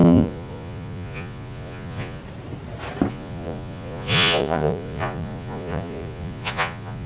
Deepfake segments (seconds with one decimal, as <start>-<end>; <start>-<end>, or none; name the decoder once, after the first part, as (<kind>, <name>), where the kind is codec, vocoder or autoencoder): 0.0-2.2 (vocoder, Vocos); 3.1-7.1